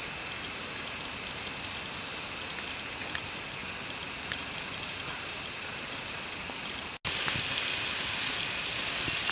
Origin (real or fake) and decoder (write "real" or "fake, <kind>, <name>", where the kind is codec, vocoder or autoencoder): real